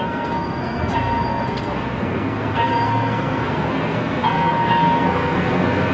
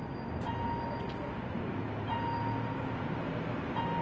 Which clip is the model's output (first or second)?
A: first